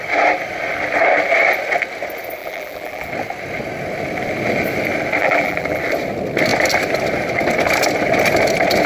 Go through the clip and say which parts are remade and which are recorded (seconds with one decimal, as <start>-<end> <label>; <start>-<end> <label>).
0.0-2.4 recorded; 2.4-3.1 remade; 3.1-5.2 recorded; 5.2-5.8 remade; 5.8-8.9 recorded